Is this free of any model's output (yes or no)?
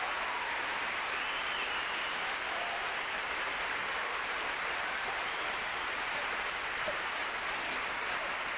no